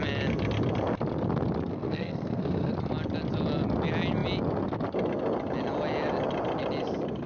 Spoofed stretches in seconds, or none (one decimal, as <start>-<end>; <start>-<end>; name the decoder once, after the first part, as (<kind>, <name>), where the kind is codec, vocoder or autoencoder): 1.7-2.7 (codec, SNAC)